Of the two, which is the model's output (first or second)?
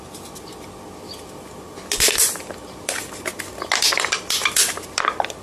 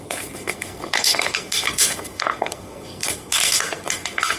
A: second